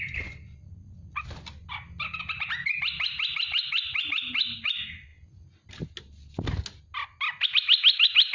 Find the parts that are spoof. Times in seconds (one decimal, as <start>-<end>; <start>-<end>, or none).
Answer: none